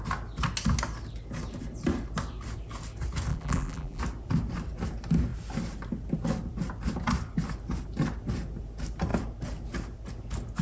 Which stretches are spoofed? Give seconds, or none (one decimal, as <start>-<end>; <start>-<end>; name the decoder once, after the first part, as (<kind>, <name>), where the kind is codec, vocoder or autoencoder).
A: 3.3-4.0 (vocoder, BigVGAN v2)